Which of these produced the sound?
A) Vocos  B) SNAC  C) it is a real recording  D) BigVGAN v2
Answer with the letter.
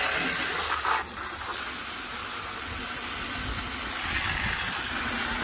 C